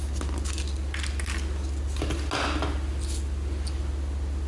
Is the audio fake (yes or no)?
no